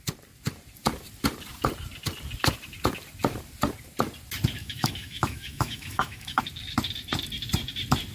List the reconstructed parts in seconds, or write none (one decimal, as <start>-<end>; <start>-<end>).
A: 4.6-6.4